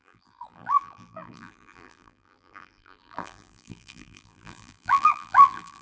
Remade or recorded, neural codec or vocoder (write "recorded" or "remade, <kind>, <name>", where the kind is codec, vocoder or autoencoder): remade, vocoder, BigVGAN v2